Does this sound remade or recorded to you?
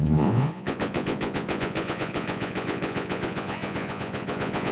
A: remade